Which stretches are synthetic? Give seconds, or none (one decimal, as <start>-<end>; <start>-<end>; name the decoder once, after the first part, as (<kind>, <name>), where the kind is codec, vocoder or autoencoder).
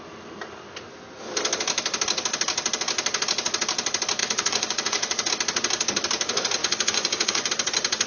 4.2-5.3 (vocoder, Vocos); 6.6-7.5